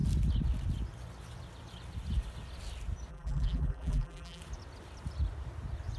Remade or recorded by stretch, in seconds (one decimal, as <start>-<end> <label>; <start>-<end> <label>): 0.0-3.1 recorded; 3.1-4.4 remade; 4.4-6.0 recorded